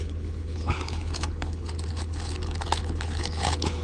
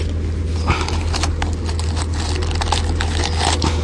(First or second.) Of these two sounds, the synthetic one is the first